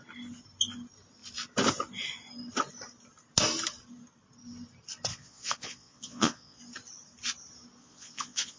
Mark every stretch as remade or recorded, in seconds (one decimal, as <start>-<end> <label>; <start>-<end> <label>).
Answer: 0.0-5.1 recorded; 5.1-6.6 remade; 6.6-7.8 recorded; 7.8-8.6 remade

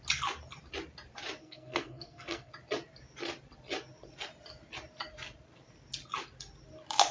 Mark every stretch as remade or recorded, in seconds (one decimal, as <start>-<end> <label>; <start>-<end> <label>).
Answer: 0.0-1.4 recorded; 1.4-2.5 remade; 2.5-7.1 recorded